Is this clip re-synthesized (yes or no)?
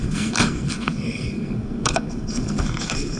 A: yes